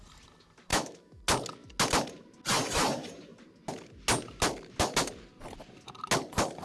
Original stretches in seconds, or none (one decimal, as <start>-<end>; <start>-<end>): 0.0-0.7; 1.2-6.6

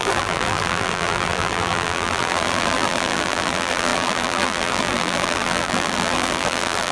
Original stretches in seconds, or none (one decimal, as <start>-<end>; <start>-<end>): none

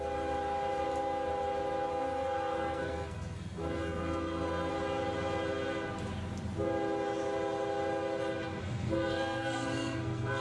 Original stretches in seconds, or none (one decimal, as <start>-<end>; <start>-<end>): 0.0-1.9; 4.7-8.6

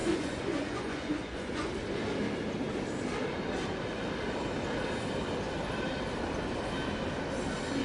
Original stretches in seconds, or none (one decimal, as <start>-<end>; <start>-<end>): 1.7-7.8

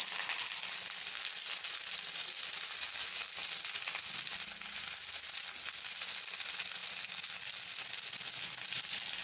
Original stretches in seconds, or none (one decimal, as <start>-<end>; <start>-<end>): 0.0-9.2

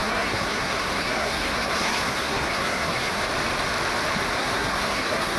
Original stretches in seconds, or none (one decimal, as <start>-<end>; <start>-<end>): 3.2-4.3